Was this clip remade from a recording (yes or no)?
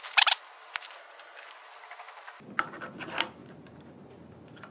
no